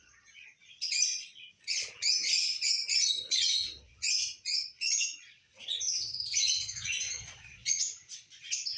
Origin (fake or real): fake